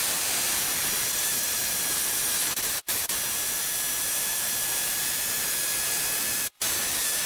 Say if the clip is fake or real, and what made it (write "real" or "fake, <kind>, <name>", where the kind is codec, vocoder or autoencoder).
real